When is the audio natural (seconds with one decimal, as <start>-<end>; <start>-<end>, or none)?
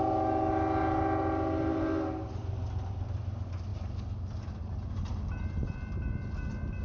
0.0-6.8